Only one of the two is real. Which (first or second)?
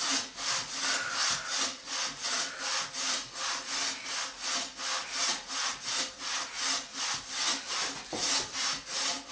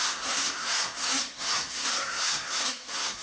first